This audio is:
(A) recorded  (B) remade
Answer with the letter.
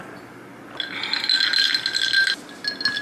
A